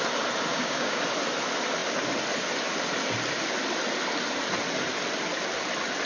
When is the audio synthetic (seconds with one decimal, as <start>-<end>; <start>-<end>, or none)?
0.5-1.0